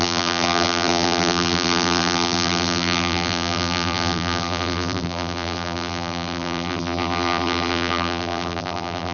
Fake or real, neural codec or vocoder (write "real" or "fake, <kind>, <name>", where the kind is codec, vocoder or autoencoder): fake, vocoder, BigVGAN v2